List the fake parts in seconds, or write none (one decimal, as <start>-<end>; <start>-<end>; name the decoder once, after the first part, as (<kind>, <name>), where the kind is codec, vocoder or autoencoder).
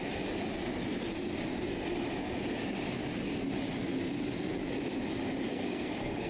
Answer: 5.5-6.3 (codec, SNAC)